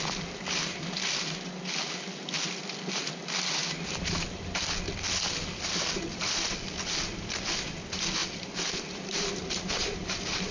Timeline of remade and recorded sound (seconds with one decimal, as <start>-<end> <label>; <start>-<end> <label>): 0.0-10.5 recorded